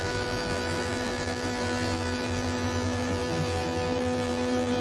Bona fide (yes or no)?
no